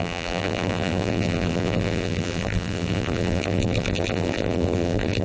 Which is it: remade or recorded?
remade